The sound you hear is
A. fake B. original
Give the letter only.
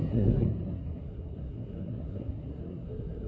A